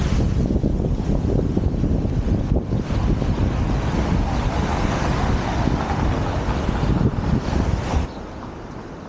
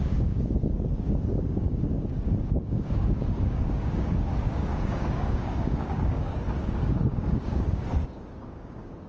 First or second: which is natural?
first